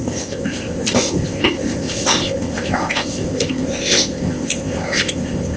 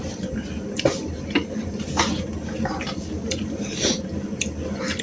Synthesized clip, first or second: first